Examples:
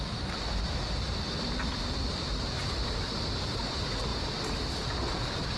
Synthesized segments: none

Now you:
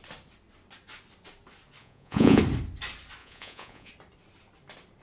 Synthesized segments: 1.8-2.4; 3.2-3.9

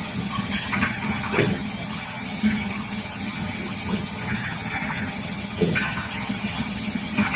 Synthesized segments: 0.0-7.4

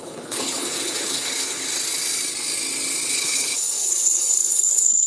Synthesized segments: 0.0-1.6; 3.1-5.1

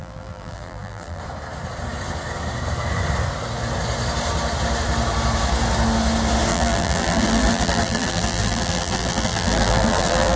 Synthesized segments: 0.0-1.2; 6.5-10.4